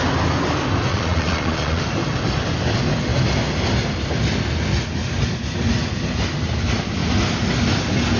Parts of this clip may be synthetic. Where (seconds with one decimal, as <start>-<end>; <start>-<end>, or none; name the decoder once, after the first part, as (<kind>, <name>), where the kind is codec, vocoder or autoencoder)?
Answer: 0.9-1.8 (vocoder, Vocos)